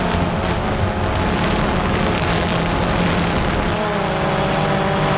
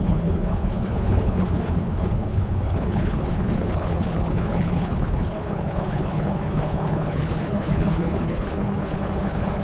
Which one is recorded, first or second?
first